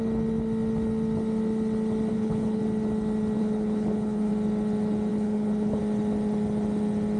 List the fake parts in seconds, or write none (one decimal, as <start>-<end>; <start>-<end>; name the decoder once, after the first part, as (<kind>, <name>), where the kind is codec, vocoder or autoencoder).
2.1-2.6 (codec, HILCodec); 3.4-4.3; 5.1-5.8